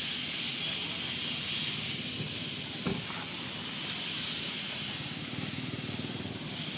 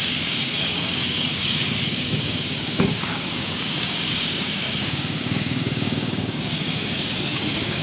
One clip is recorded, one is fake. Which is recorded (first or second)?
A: first